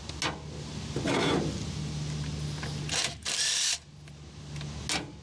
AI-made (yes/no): no